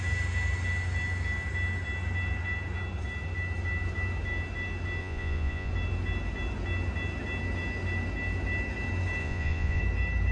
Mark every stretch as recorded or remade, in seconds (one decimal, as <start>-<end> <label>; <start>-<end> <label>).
0.0-5.0 recorded; 5.0-5.7 remade; 5.7-9.2 recorded; 9.2-9.8 remade; 9.8-10.3 recorded